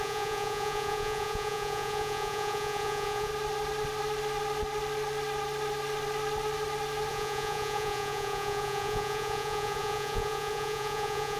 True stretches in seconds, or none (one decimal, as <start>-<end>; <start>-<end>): 3.3-7.1